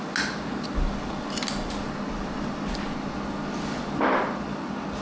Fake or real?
real